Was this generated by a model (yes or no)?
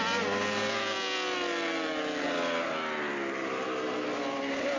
no